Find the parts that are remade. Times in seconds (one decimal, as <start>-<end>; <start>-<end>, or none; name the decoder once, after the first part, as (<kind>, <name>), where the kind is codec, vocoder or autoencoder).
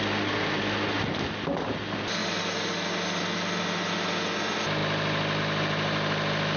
2.2-2.7 (vocoder, BigVGAN v2)